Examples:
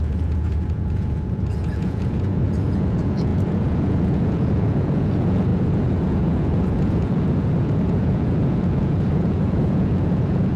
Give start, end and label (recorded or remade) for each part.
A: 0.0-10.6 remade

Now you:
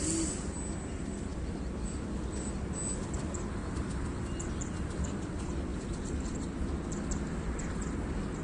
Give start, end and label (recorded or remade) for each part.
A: 0.0-8.4 recorded

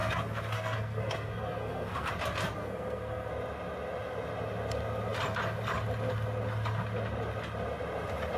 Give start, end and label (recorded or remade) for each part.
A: 0.0-2.1 remade; 2.1-2.6 recorded; 2.6-3.3 remade; 3.3-8.4 recorded

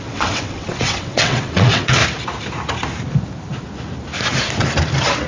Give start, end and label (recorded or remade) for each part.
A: 0.0-2.0 remade; 2.0-5.3 recorded